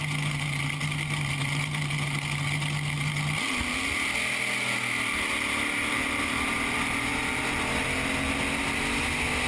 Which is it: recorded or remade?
recorded